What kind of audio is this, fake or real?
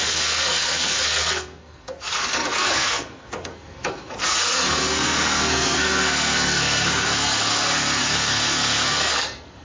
fake